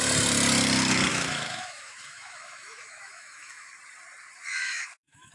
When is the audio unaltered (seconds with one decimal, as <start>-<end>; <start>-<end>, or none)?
0.0-1.1; 3.7-4.5